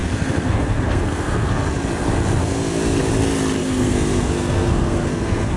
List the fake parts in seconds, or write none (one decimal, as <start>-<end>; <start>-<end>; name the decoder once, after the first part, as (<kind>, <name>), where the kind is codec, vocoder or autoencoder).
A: 0.0-1.5 (codec, SNAC); 2.4-3.1; 3.6-5.6